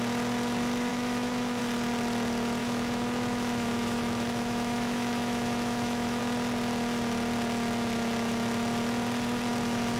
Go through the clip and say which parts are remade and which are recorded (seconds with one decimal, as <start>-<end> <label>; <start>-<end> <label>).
0.0-0.9 recorded; 0.9-1.6 remade; 1.6-2.6 recorded; 2.6-6.2 remade; 6.2-10.0 recorded